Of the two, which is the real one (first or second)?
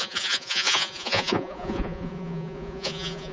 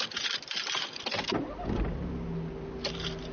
second